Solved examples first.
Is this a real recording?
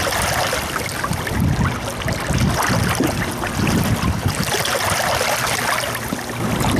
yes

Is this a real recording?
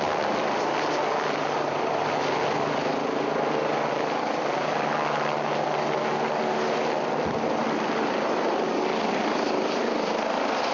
yes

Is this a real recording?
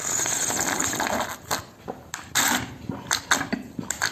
yes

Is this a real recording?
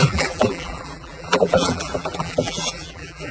no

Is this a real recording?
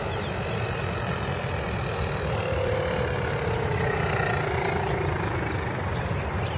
yes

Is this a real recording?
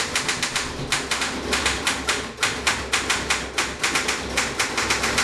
yes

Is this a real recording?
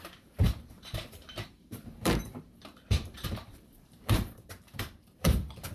no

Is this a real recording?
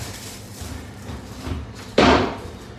no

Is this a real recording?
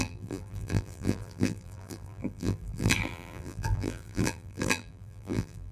no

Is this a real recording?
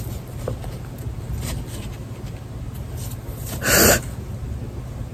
yes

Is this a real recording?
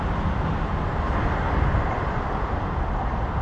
no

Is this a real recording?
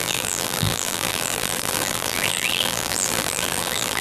no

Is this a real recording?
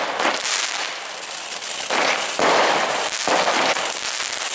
no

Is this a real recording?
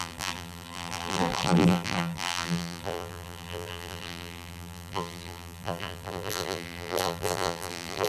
no